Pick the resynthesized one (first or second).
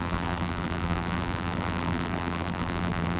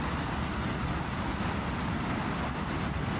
first